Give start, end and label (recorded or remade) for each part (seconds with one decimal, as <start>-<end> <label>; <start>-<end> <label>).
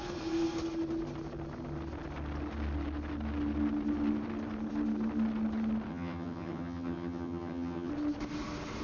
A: 0.0-5.9 recorded; 5.9-7.9 remade; 7.9-8.8 recorded